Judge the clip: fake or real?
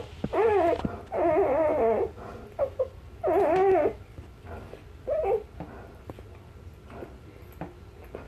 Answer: real